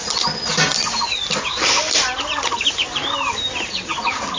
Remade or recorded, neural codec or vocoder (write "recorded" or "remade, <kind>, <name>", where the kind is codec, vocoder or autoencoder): recorded